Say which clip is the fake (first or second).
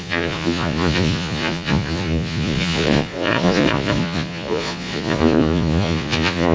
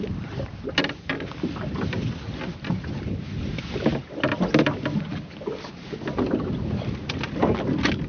first